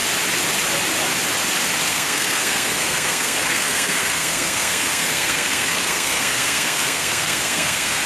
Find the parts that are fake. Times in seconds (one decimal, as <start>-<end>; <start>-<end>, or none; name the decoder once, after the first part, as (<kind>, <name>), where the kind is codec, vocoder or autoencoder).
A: 1.9-8.1 (codec, SNAC)